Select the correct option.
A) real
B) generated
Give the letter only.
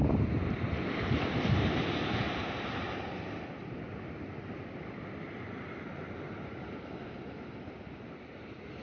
B